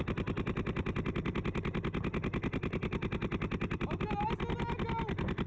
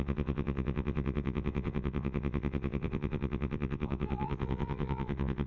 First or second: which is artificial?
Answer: second